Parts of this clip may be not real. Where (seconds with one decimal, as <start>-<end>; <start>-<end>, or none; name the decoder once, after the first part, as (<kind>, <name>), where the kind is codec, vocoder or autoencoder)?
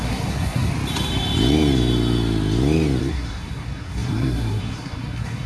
0.0-0.7 (codec, SNAC); 3.0-5.5